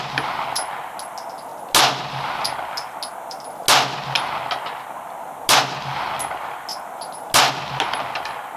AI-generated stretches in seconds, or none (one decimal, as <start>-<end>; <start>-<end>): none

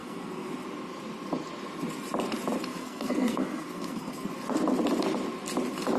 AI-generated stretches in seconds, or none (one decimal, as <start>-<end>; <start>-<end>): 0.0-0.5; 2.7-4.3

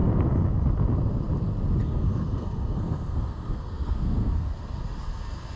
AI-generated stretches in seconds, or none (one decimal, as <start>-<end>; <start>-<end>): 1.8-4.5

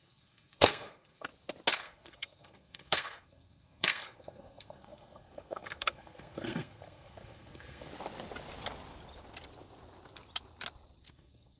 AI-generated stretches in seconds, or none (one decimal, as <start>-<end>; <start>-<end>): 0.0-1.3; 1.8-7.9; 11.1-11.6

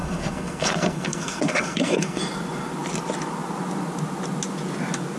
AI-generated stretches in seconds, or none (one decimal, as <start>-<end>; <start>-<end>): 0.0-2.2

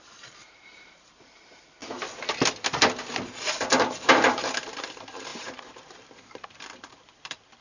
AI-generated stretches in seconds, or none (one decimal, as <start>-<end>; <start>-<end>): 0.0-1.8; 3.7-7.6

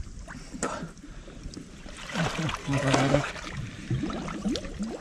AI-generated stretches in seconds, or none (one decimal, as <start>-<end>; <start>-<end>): 2.6-3.3